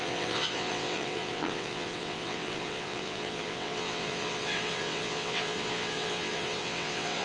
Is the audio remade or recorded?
remade